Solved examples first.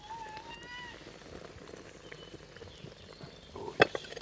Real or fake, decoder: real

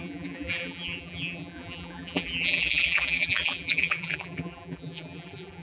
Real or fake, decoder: fake, vocoder, BigVGAN v2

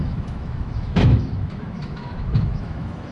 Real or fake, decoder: fake, autoencoder, DAC-VAE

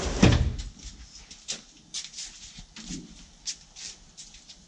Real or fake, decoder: real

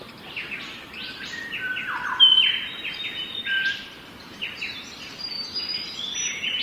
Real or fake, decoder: fake, vocoder, BigVGAN v2